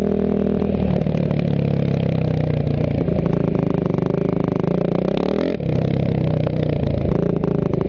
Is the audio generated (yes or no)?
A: no